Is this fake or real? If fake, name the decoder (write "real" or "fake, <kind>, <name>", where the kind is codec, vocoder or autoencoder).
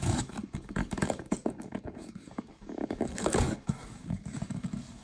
fake, codec, DAC